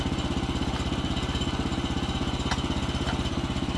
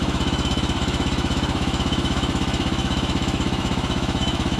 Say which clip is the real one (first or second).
first